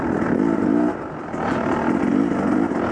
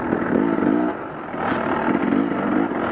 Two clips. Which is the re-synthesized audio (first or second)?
first